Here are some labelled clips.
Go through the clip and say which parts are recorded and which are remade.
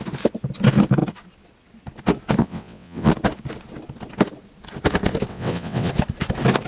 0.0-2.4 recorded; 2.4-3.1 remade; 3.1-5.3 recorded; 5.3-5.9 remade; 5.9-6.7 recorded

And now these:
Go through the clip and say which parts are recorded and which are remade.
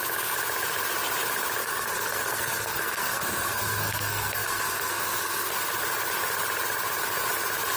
0.0-1.6 recorded; 1.6-5.5 remade; 5.5-7.8 recorded